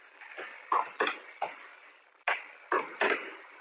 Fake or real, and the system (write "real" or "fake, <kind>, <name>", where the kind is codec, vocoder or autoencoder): real